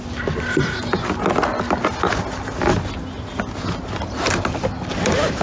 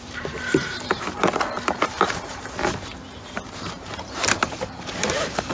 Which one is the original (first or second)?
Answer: first